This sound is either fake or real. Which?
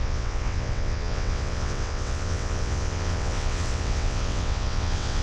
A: fake